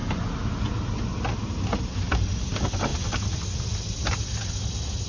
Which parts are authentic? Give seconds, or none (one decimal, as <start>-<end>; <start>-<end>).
0.0-5.1